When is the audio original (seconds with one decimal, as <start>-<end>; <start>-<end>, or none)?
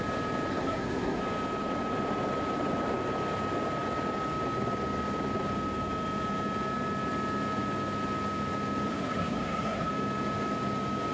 0.0-0.5; 1.2-8.9; 9.9-11.1